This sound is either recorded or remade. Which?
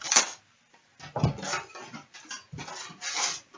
recorded